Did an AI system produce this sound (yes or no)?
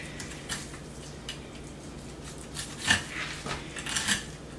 no